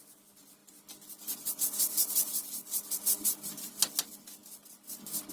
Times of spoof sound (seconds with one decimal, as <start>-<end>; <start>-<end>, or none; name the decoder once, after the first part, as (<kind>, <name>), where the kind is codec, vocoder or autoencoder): none